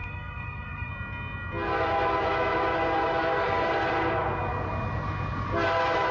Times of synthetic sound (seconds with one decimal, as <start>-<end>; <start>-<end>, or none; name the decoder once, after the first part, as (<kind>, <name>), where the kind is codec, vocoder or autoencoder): 0.0-0.9 (codec, SNAC); 3.2-3.7